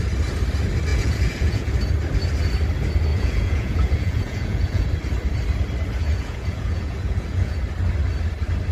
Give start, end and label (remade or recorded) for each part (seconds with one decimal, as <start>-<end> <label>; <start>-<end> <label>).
0.0-0.9 recorded; 0.9-1.7 remade; 1.7-3.1 recorded; 3.1-4.9 remade; 4.9-6.0 recorded; 6.0-7.6 remade; 7.6-8.7 recorded